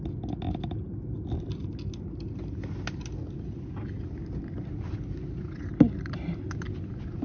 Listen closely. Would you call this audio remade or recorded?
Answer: recorded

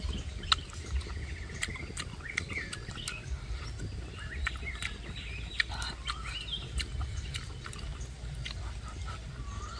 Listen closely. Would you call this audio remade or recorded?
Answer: recorded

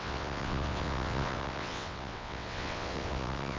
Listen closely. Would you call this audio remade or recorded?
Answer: remade